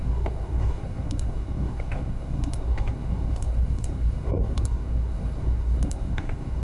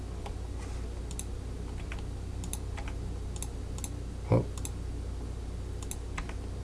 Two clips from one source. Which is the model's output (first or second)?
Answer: first